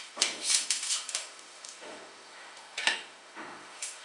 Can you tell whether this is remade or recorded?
remade